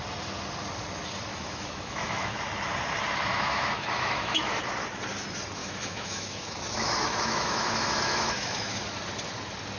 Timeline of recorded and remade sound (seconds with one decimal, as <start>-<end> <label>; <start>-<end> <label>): 0.0-1.3 recorded; 1.3-2.4 remade; 2.4-3.3 recorded; 3.3-4.6 remade; 4.6-5.6 recorded; 5.6-8.8 remade; 8.8-9.8 recorded